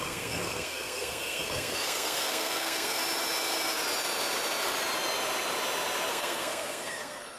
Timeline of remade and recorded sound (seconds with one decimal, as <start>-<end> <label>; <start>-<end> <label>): 0.0-3.0 remade; 3.0-6.1 recorded; 6.1-7.4 remade